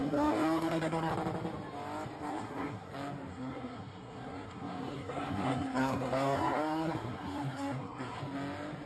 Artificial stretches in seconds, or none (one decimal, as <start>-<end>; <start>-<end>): 0.0-1.1; 2.3-2.9; 3.3-8.2